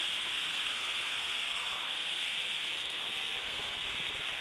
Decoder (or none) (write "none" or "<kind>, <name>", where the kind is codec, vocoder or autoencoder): codec, SNAC